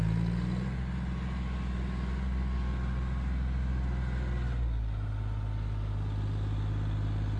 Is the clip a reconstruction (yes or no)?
no